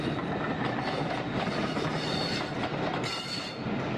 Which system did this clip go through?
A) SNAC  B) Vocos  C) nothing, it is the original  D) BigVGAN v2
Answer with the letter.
C